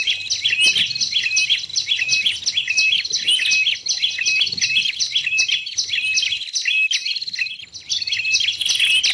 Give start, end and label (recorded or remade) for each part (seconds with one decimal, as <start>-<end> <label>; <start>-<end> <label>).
0.0-9.1 recorded